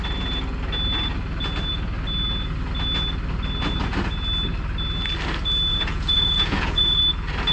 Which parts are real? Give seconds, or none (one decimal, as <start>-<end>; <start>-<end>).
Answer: 0.0-5.7; 7.0-7.5